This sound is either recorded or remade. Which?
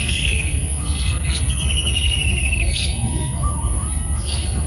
remade